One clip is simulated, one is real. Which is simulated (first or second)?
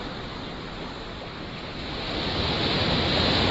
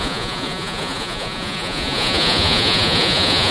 second